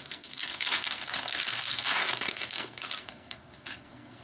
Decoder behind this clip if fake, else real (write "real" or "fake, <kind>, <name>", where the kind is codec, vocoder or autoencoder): fake, codec, SNAC